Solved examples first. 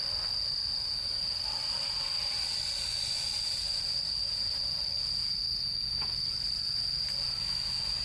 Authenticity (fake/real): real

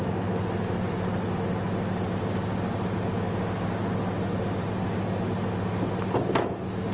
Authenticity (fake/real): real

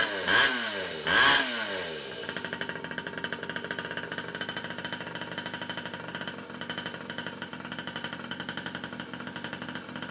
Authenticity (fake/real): real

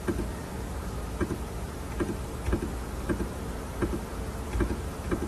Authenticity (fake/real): real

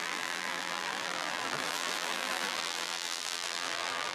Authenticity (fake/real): fake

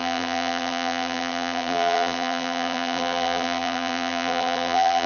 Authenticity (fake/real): fake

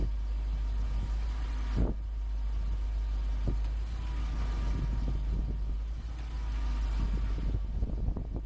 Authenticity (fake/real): real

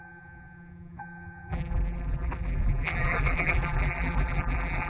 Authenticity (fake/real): fake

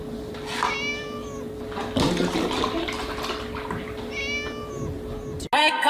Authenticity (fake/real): real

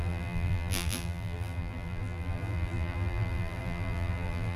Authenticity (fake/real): fake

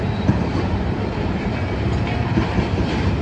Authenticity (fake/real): fake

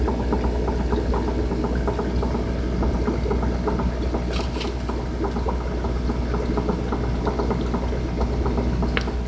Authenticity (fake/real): real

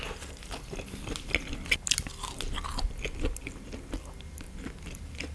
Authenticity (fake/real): real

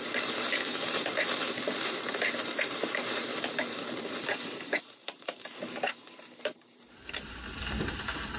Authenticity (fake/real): fake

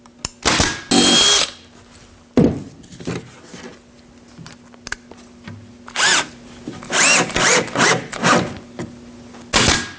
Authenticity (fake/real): real